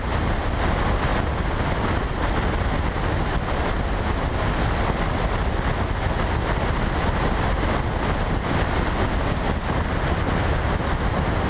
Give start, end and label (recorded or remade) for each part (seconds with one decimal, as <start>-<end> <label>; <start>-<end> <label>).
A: 0.0-11.5 recorded